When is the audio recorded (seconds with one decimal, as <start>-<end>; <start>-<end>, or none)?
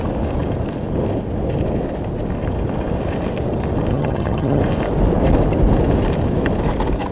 0.0-3.9; 4.6-7.1